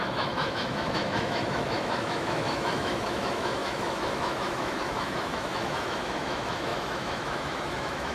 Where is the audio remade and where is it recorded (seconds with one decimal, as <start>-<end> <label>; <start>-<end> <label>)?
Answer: 0.0-8.1 remade